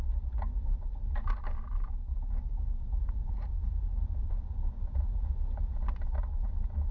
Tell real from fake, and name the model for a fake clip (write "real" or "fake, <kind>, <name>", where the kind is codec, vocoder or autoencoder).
fake, vocoder, BigVGAN v2